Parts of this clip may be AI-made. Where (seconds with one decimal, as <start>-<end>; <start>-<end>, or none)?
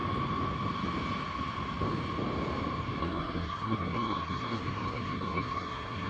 3.0-6.1